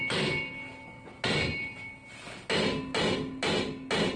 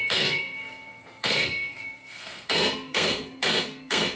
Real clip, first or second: first